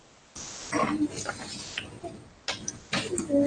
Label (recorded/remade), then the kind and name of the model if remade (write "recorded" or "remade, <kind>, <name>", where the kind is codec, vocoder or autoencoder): recorded